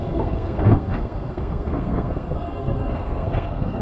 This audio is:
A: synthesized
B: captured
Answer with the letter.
A